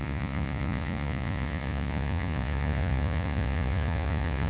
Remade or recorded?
remade